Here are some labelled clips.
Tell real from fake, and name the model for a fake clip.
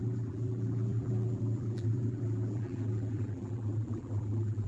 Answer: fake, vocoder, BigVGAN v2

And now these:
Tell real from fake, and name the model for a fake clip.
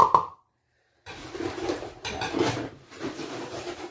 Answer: fake, vocoder, BigVGAN v2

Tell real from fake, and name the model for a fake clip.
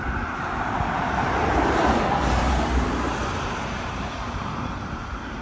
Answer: fake, vocoder, BigVGAN v2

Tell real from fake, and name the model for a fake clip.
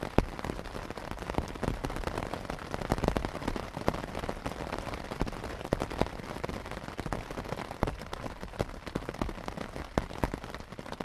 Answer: real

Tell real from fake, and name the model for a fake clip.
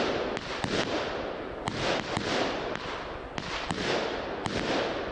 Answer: real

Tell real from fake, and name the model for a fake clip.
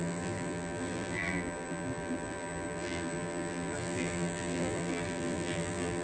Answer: fake, vocoder, BigVGAN v2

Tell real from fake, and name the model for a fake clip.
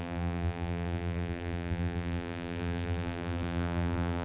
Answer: fake, vocoder, BigVGAN v2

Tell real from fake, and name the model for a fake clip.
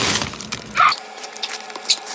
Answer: fake, vocoder, BigVGAN v2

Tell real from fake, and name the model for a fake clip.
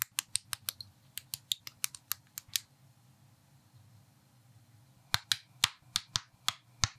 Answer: real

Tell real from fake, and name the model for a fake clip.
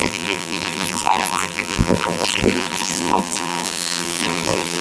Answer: fake, vocoder, BigVGAN v2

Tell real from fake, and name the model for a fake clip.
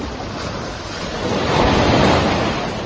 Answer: real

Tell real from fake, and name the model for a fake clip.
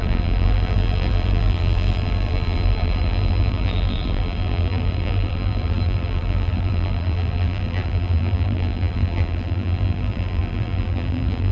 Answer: fake, vocoder, BigVGAN v2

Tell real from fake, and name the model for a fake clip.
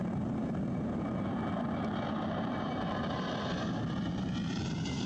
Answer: fake, vocoder, BigVGAN v2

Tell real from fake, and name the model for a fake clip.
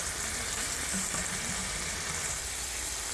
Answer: real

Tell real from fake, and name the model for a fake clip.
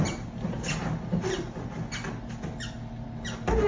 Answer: real